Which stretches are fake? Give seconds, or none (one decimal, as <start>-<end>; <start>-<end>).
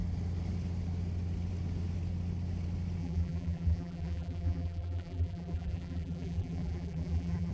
3.0-7.5